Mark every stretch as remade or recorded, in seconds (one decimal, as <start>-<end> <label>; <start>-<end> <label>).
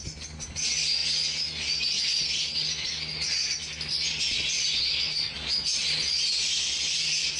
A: 0.0-5.8 recorded; 5.8-7.4 remade